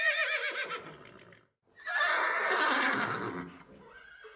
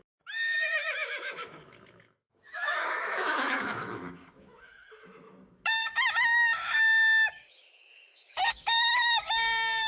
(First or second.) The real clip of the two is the first